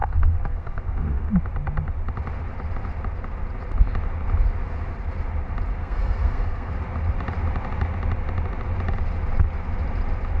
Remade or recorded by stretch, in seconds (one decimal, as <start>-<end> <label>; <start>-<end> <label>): 0.0-1.3 remade; 1.3-5.8 recorded; 5.8-6.7 remade; 6.7-10.4 recorded